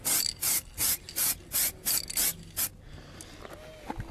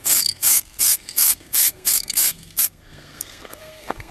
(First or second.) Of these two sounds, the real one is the first